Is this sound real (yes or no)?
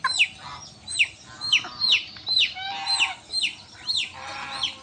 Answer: yes